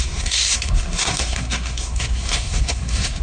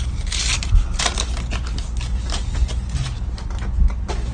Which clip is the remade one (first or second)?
first